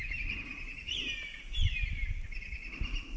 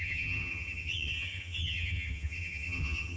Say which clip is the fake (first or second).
second